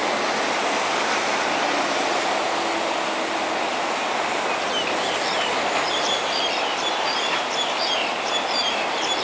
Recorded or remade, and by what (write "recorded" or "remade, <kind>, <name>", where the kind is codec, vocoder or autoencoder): recorded